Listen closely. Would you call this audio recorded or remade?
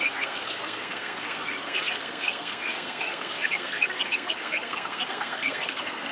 remade